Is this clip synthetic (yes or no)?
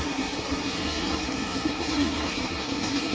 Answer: yes